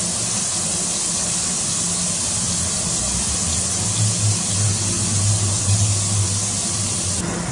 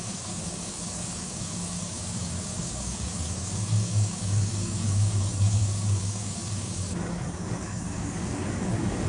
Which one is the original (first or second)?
first